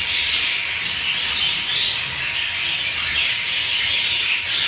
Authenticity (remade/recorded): recorded